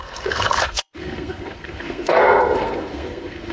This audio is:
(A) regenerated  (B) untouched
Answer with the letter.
A